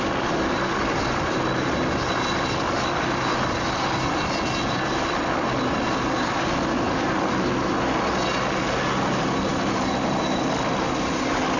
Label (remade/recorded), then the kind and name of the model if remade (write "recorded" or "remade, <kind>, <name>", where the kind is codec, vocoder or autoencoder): recorded